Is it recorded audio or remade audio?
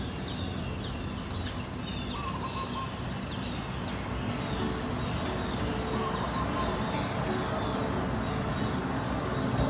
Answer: recorded